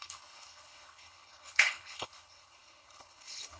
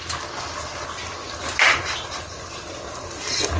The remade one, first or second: first